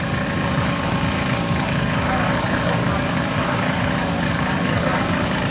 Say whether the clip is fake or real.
fake